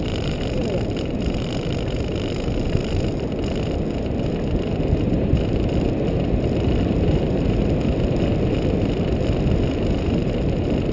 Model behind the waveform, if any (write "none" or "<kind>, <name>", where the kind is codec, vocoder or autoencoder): none